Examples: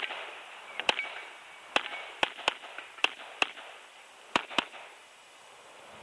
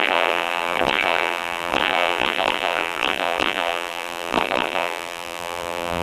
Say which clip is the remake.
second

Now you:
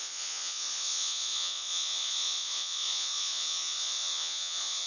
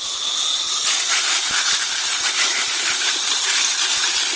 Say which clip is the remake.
first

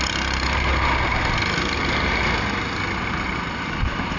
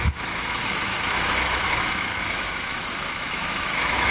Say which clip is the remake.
second